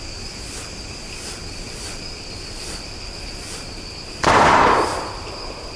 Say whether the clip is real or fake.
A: fake